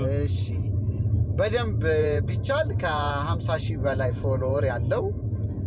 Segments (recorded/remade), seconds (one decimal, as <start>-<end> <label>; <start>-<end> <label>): 0.0-2.0 recorded; 2.0-3.1 remade; 3.1-3.8 recorded; 3.8-4.7 remade; 4.7-5.7 recorded